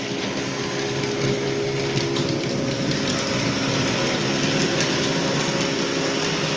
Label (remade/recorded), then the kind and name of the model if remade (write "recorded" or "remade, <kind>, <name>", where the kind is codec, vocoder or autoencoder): recorded